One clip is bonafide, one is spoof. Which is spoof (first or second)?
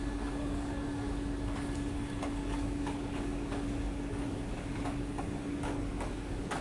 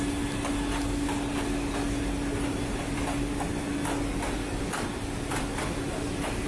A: first